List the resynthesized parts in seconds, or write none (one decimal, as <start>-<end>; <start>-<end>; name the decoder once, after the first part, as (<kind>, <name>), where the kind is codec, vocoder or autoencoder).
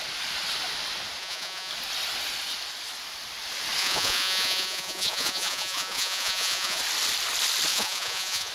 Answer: 1.2-1.7 (vocoder, Vocos); 3.8-6.8; 7.7-8.5